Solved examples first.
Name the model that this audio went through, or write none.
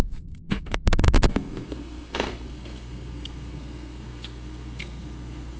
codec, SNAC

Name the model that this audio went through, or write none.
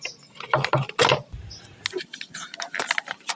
none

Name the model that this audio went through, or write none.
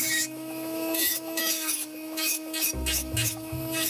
autoencoder, DAC-VAE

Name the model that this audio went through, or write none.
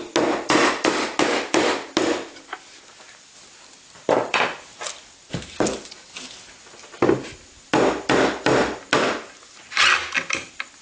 none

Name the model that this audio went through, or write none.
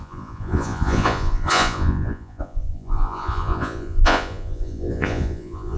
vocoder, Vocos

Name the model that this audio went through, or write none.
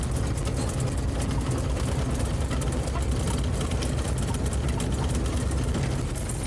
none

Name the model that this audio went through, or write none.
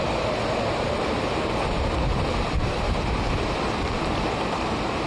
none